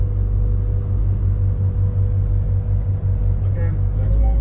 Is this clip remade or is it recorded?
recorded